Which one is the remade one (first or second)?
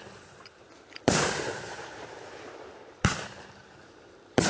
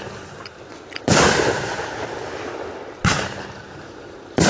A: first